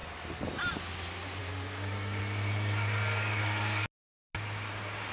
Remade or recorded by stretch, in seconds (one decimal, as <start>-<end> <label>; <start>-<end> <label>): 0.0-1.4 recorded; 1.4-2.2 remade; 2.2-5.1 recorded